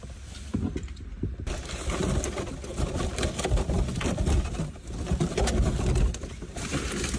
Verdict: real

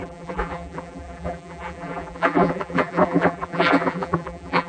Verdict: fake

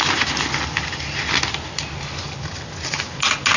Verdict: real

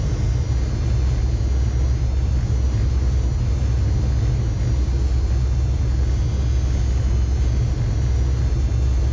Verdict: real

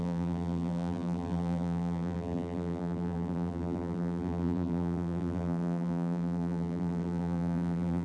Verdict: fake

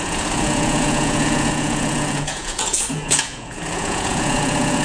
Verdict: fake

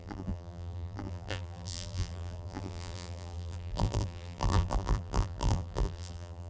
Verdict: fake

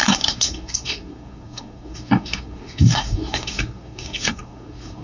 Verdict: fake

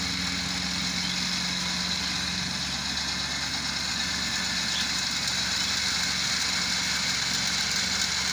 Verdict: real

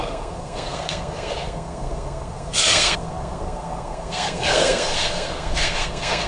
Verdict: fake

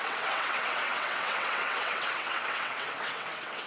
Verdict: fake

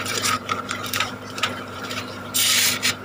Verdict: fake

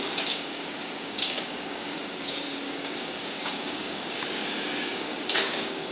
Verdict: fake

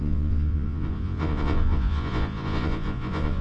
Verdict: fake